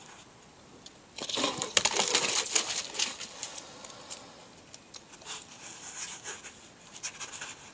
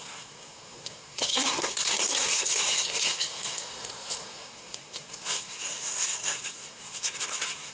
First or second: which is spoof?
second